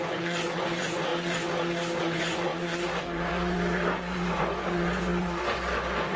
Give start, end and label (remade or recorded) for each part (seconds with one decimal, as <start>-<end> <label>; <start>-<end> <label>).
0.0-1.1 remade; 1.1-2.0 recorded; 2.0-6.2 remade